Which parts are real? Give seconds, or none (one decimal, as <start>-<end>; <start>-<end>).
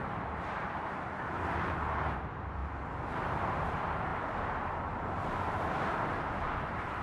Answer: 2.6-3.5